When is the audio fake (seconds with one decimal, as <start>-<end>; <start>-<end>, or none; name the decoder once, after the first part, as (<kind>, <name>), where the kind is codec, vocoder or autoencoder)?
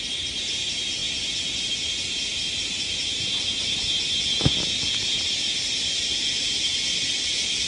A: none